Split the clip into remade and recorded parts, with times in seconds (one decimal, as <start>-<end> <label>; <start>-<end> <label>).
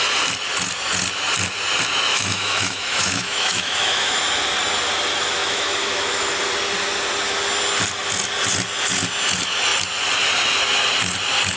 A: 0.0-2.1 recorded; 2.1-4.2 remade; 4.2-5.4 recorded; 5.4-6.3 remade; 6.3-11.6 recorded